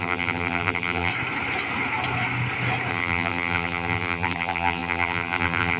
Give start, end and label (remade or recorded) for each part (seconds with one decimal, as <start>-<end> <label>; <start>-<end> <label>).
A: 0.0-1.1 remade; 1.1-2.9 recorded; 2.9-5.8 remade

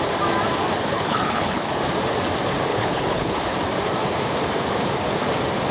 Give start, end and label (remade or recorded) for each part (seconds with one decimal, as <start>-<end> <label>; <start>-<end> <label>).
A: 0.0-0.9 recorded; 0.9-1.8 remade; 1.8-2.7 recorded; 2.7-3.4 remade; 3.4-5.7 recorded

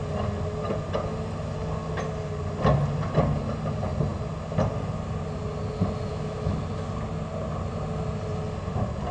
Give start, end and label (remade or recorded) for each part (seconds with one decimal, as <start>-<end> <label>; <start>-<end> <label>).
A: 0.0-6.1 recorded; 6.1-6.6 remade; 6.6-9.1 recorded

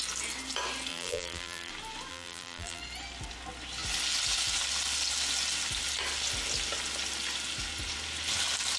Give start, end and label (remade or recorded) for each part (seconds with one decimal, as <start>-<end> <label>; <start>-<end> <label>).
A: 0.0-0.9 recorded; 0.9-1.7 remade; 1.7-2.1 recorded; 2.1-2.8 remade; 2.8-8.8 recorded

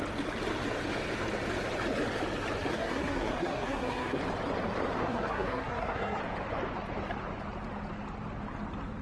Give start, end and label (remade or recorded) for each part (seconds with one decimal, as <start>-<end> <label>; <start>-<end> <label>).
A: 0.0-2.7 recorded; 2.7-4.2 remade; 4.2-5.0 recorded; 5.0-6.2 remade; 6.2-9.0 recorded

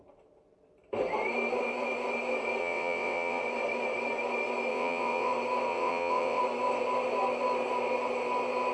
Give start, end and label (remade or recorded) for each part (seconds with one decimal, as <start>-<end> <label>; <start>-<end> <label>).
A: 0.0-2.6 recorded; 2.6-3.4 remade; 3.4-4.7 recorded; 4.7-5.3 remade; 5.3-5.7 recorded; 5.7-6.4 remade; 6.4-8.7 recorded

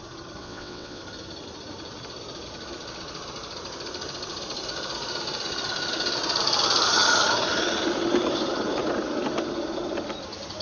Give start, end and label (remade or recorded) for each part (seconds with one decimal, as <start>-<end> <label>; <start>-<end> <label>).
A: 0.0-0.4 recorded; 0.4-1.0 remade; 1.0-10.6 recorded

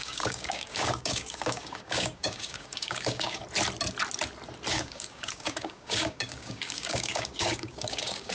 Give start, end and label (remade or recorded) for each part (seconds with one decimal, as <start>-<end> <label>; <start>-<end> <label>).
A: 0.0-3.4 remade; 3.4-4.7 recorded; 4.7-8.3 remade